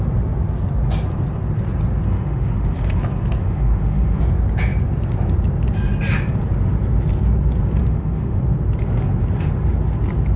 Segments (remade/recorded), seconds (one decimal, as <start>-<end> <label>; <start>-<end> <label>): 0.0-2.1 recorded; 2.1-3.0 remade; 3.0-3.4 recorded; 3.4-4.2 remade; 4.2-7.8 recorded; 7.8-8.4 remade; 8.4-10.4 recorded